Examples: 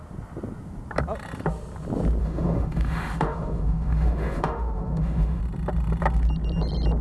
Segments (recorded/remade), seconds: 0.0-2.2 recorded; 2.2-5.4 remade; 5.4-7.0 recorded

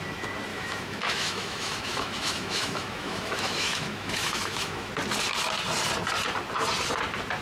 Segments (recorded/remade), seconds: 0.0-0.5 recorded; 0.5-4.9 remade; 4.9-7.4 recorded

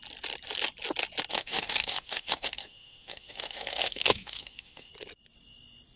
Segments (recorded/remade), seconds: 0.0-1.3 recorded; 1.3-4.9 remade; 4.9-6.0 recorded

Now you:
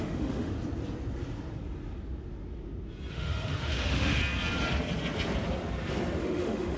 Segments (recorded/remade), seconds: 0.0-0.5 remade; 0.5-3.1 recorded; 3.1-4.2 remade; 4.2-6.2 recorded; 6.2-6.8 remade